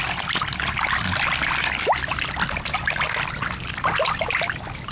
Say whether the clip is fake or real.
real